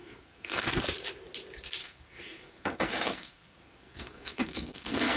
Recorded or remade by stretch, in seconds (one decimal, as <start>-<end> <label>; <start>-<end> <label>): 0.0-0.8 remade; 0.8-1.8 recorded; 1.8-5.2 remade